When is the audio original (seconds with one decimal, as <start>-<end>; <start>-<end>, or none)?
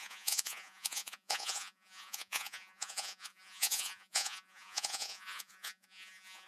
none